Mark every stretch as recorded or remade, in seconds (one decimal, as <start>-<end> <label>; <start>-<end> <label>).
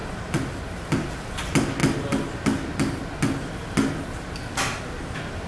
0.0-5.5 recorded